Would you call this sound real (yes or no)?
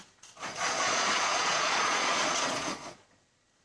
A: no